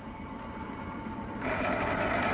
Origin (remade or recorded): remade